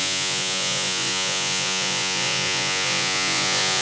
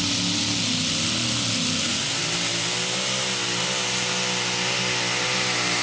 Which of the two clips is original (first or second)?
second